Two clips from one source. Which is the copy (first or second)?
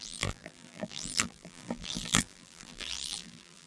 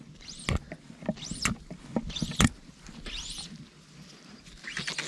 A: first